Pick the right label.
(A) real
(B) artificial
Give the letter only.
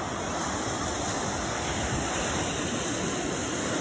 A